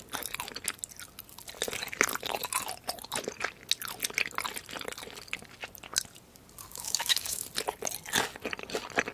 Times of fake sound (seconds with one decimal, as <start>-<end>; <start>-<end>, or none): 6.7-7.4